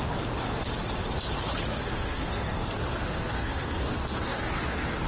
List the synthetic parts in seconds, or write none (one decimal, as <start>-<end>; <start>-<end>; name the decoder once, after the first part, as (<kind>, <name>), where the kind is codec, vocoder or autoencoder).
1.7-5.1 (codec, SNAC)